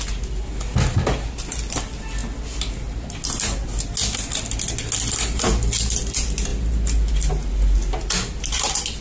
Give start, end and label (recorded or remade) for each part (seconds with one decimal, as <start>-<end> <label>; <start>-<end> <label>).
0.0-9.0 recorded